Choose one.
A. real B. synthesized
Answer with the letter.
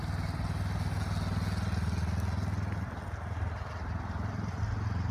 A